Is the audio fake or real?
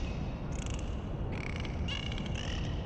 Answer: real